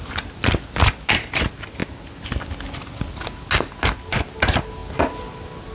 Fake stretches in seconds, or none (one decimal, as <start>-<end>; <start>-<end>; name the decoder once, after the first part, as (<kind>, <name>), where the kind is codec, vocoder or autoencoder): none